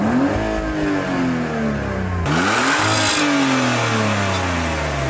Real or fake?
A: real